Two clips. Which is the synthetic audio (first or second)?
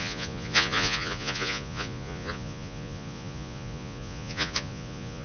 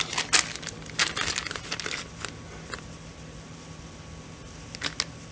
first